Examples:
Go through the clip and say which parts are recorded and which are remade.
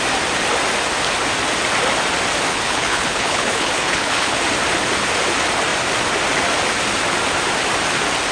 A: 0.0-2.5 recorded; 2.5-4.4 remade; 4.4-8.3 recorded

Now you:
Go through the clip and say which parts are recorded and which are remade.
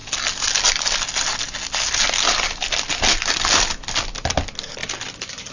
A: 0.0-4.8 recorded; 4.8-5.5 remade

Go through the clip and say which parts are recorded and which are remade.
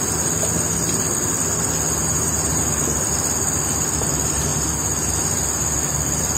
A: 0.0-2.0 recorded; 2.0-2.6 remade; 2.6-6.4 recorded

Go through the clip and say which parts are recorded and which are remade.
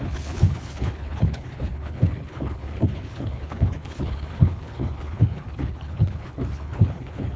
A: 0.0-7.4 remade